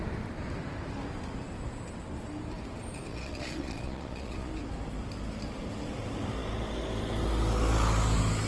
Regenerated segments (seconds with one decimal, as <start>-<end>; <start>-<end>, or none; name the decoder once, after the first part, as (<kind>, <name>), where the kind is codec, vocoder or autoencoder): 3.1-4.5 (vocoder, Vocos)